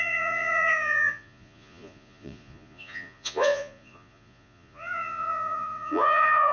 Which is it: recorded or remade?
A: remade